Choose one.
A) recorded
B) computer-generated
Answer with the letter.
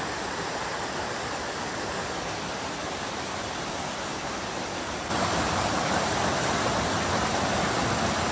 A